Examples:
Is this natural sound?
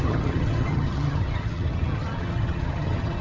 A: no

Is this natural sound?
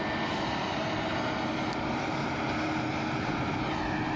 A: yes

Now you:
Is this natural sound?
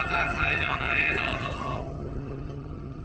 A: no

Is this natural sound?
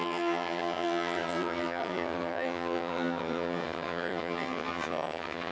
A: no